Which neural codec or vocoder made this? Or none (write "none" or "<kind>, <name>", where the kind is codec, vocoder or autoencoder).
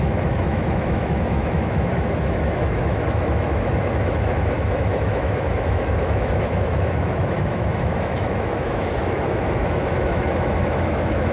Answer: autoencoder, DAC-VAE